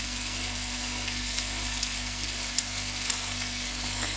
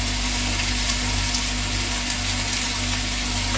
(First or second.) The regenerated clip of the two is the first